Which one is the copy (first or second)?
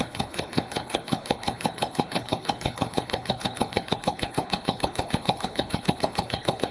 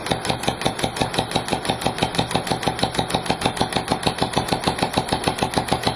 first